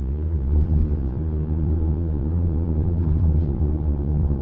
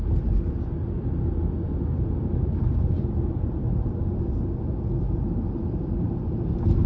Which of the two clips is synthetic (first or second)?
first